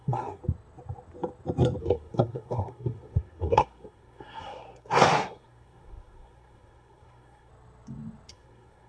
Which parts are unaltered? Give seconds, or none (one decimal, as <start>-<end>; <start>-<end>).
0.4-1.8; 7.5-8.3